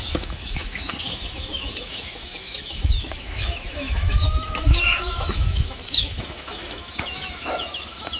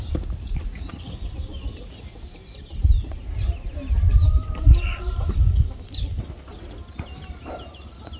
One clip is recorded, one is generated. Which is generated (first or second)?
first